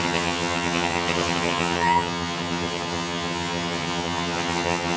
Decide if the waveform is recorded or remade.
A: remade